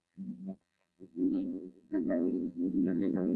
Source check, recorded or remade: remade